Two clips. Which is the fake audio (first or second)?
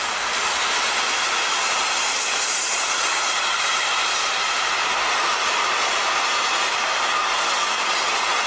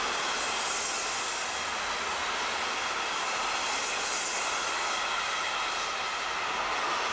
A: first